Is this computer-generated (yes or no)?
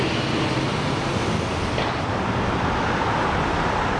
no